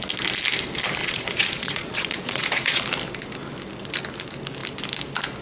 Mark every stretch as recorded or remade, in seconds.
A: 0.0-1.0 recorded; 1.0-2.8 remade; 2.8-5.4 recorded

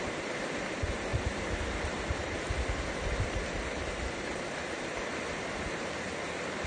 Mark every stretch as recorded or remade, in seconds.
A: 0.0-6.7 recorded

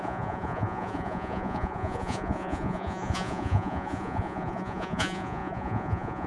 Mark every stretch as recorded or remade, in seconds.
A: 0.0-6.3 remade

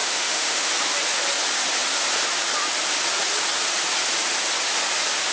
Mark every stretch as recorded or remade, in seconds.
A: 0.0-0.7 remade; 0.7-5.3 recorded

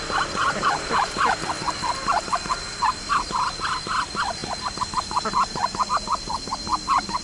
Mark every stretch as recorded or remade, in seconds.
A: 0.0-0.4 recorded; 0.4-1.5 remade; 1.5-7.2 recorded

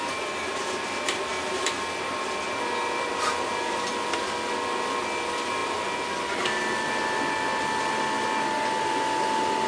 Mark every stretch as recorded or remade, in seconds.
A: 0.0-9.7 recorded

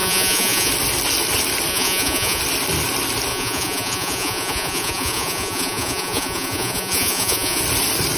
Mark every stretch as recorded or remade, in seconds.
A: 0.0-0.7 remade; 0.7-1.7 recorded; 1.7-2.4 remade; 2.4-3.3 recorded; 3.3-7.6 remade; 7.6-8.2 recorded